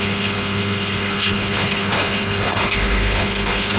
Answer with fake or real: fake